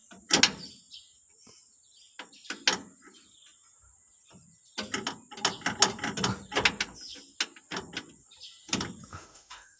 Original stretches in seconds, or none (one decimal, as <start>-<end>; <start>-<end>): 0.0-9.1